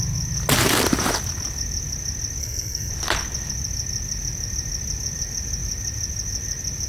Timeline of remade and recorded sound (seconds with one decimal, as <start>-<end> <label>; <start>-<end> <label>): 0.0-2.4 recorded; 2.4-2.9 remade; 2.9-6.9 recorded